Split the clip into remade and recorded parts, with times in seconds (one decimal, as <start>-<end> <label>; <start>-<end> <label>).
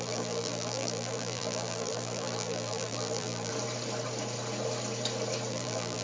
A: 0.0-3.5 remade; 3.5-5.5 recorded; 5.5-6.0 remade